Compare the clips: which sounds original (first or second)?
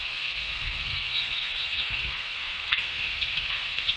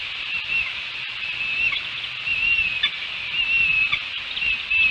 second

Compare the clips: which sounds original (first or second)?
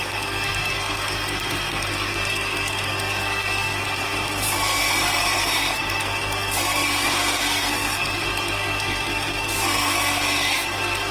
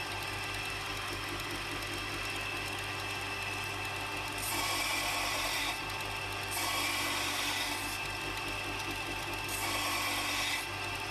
second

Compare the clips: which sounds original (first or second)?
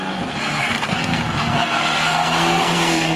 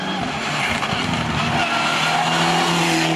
second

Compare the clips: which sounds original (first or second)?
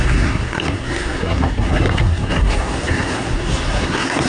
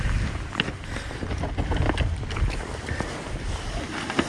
second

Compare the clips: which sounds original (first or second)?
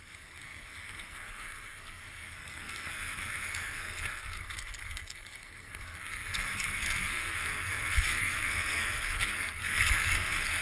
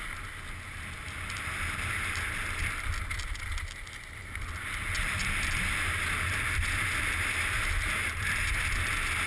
second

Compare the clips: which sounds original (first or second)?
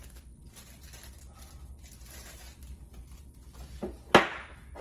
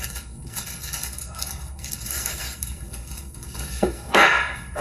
first